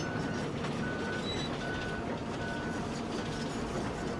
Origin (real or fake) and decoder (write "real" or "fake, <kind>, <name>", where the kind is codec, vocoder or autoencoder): real